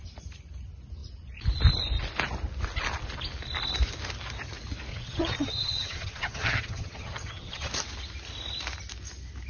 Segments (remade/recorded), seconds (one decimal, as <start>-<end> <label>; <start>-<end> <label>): 0.0-4.9 recorded; 4.9-7.7 remade; 7.7-9.5 recorded